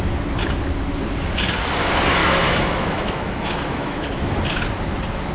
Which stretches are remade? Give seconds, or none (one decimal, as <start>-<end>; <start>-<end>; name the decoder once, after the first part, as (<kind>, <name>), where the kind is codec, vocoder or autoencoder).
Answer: 2.2-4.4 (autoencoder, DAC-VAE)